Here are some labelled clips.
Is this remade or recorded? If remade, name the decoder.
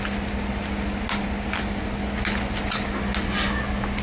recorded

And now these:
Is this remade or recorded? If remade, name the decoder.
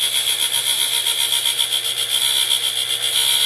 recorded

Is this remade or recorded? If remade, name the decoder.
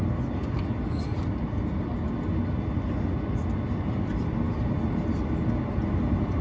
recorded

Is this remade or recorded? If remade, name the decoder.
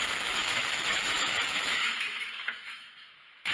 remade, autoencoder, DAC-VAE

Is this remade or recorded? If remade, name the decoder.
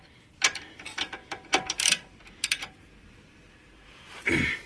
remade, vocoder, BigVGAN v2